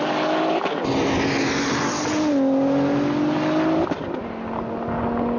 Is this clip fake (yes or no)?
no